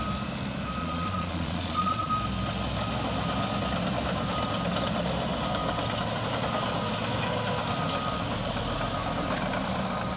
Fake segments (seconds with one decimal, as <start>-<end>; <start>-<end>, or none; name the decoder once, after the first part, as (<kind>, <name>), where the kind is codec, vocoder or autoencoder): 0.8-2.1 (vocoder, Vocos)